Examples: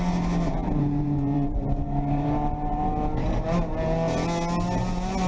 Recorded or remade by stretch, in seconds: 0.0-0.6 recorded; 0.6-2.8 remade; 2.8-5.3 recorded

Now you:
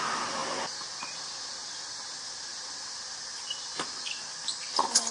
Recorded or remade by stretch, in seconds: 0.0-5.1 recorded

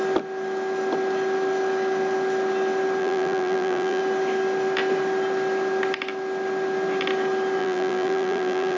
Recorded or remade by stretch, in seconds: 0.0-3.0 recorded; 3.0-4.0 remade; 4.0-7.6 recorded; 7.6-8.8 remade

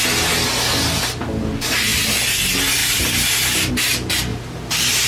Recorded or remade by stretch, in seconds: 0.0-2.8 recorded; 2.8-3.7 remade; 3.7-4.3 recorded; 4.3-5.1 remade